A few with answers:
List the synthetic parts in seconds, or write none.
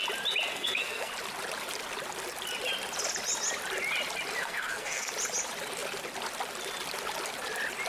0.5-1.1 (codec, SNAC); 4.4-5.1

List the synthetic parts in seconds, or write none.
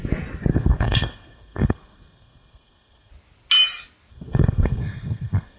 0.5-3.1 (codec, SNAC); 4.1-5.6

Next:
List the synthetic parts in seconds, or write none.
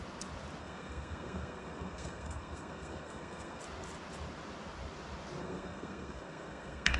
0.6-3.6 (codec, SNAC); 5.4-7.0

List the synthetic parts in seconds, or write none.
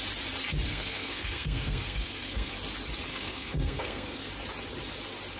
0.7-2.5 (codec, SNAC); 3.1-4.3